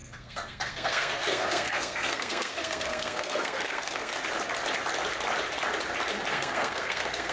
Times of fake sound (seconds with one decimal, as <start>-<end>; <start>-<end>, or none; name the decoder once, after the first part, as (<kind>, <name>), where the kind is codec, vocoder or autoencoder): 0.0-4.1 (codec, SNAC); 6.3-7.3